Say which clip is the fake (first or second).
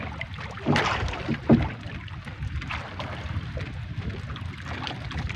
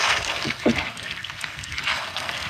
second